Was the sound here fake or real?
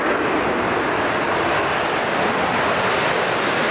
real